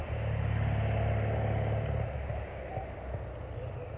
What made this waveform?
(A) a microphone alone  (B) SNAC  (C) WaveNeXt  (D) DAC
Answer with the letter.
A